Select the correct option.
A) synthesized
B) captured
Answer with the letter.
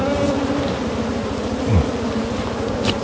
B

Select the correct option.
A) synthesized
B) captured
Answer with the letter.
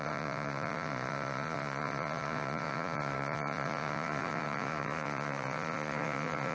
A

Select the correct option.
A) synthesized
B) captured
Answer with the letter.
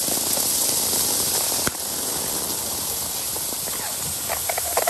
B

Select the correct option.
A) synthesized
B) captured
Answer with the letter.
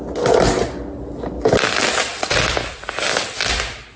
B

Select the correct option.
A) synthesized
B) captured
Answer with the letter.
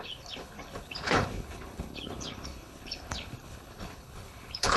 A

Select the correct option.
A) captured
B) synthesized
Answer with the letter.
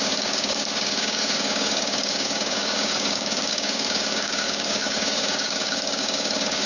B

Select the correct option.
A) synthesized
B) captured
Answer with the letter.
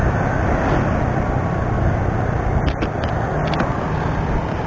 B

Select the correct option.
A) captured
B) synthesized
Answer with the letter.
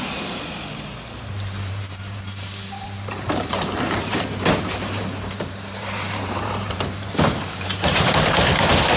B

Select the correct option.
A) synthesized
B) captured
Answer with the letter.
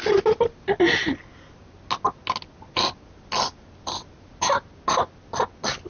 B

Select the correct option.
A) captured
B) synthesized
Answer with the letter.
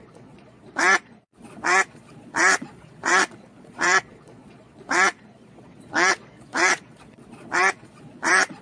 B